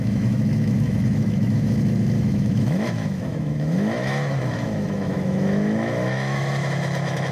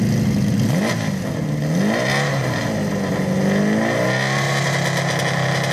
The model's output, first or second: first